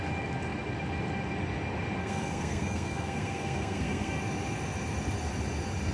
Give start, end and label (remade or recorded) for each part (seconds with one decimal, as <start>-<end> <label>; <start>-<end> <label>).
0.0-2.0 recorded; 2.0-4.2 remade; 4.2-5.9 recorded

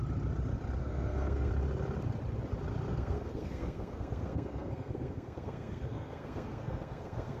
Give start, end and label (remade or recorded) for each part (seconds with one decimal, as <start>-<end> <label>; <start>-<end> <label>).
0.0-0.8 recorded; 0.8-1.5 remade; 1.5-2.9 recorded; 2.9-7.4 remade

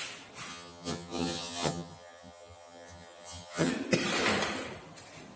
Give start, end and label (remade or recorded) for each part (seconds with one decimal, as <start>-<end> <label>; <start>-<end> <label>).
0.0-0.5 recorded; 0.5-3.7 remade; 3.7-5.4 recorded

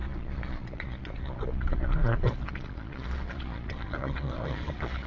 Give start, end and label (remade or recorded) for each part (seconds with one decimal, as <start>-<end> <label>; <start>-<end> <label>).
0.0-5.1 remade

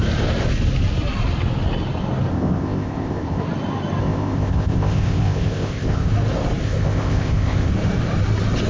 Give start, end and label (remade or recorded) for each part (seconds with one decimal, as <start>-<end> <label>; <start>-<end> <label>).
0.0-2.3 recorded; 2.3-3.4 remade; 3.4-4.0 recorded; 4.0-6.1 remade; 6.1-6.6 recorded; 6.6-7.7 remade; 7.7-8.7 recorded

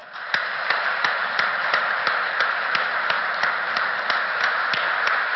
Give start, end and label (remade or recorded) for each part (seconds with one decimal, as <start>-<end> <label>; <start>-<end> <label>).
0.0-3.2 remade; 3.2-5.4 recorded

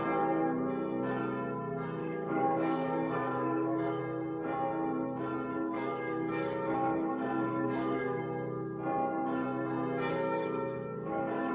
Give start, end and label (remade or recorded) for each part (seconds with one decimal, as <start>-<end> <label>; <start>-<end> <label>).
0.0-2.0 recorded; 2.0-4.0 remade; 4.0-5.5 recorded; 5.5-8.2 remade; 8.2-10.1 recorded; 10.1-11.5 remade

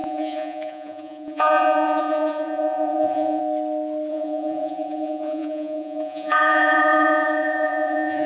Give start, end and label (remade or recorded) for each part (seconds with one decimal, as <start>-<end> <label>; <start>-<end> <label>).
0.0-3.4 remade; 3.4-4.1 recorded; 4.1-8.3 remade